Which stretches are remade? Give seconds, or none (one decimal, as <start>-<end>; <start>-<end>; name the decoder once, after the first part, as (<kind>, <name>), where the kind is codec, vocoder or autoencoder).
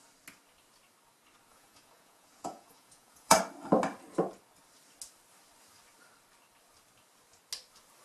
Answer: 1.5-3.4 (vocoder, Vocos)